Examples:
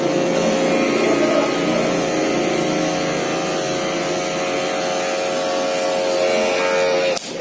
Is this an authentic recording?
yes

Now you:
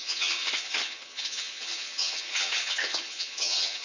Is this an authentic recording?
no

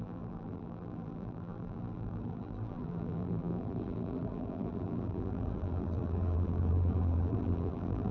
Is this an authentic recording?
no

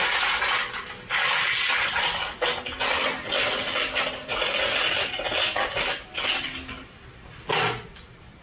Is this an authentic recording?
yes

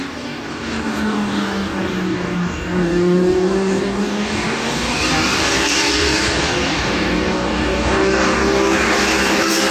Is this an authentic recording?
no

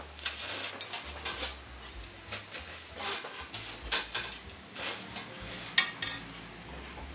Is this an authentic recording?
yes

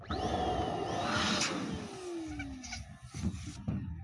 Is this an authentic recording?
yes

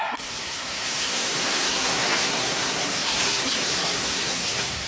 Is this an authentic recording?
no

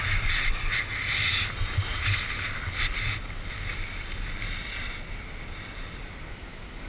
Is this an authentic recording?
yes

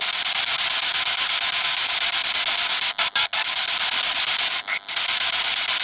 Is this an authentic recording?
yes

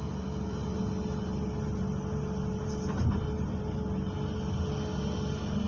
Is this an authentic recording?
yes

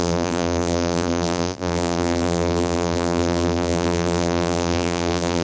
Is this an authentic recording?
no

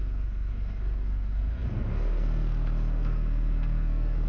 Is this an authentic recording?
no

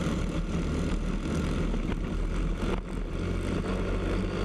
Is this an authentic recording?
yes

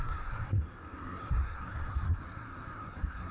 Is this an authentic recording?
no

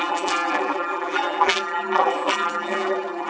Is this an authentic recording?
no